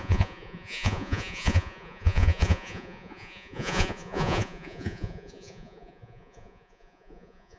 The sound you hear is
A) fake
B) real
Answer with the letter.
A